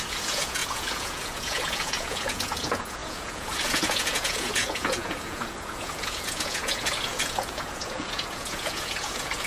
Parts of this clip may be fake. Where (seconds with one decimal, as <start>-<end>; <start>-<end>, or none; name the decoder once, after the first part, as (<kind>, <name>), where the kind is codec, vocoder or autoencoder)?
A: 0.0-9.5 (vocoder, Vocos)